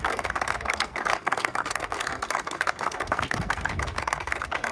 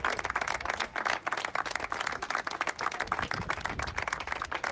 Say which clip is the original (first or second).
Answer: second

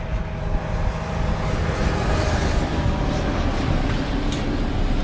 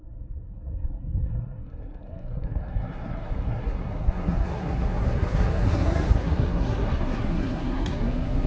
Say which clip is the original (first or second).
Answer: first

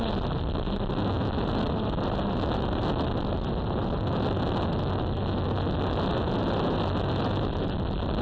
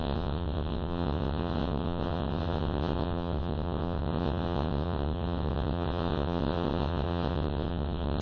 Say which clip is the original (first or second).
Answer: first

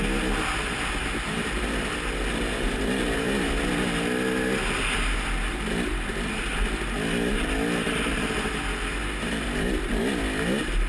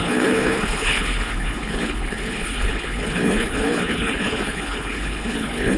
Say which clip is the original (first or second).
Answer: first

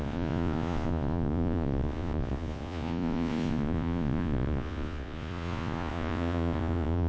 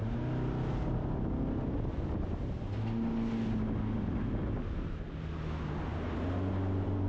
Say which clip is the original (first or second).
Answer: second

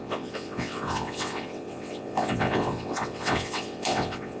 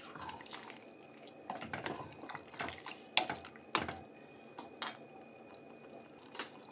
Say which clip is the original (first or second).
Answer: second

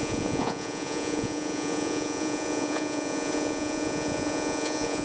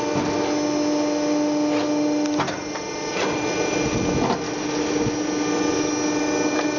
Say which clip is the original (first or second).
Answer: second